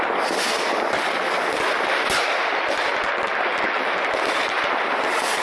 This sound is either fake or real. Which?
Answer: real